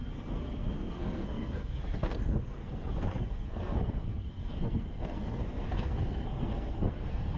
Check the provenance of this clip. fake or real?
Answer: fake